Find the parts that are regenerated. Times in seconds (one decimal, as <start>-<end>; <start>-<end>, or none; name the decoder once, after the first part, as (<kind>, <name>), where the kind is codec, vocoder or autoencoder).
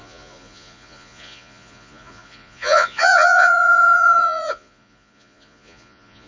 0.0-6.3 (vocoder, Vocos)